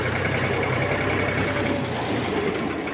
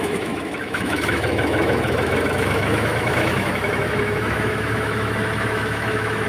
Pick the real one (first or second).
first